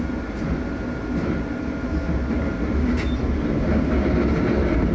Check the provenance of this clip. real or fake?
real